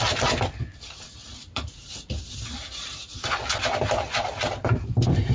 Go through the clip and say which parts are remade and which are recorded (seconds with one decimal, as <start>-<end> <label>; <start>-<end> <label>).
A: 0.0-1.2 recorded; 1.2-1.9 remade; 1.9-5.3 recorded